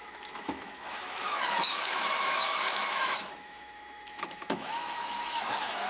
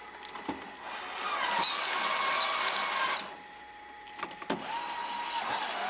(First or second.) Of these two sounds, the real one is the second